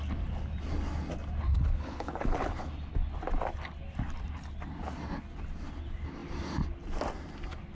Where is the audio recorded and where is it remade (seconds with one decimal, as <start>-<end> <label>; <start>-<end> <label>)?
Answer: 0.0-1.5 recorded; 1.5-2.7 remade; 2.7-7.7 recorded